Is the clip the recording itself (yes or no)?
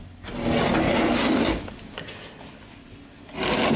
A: yes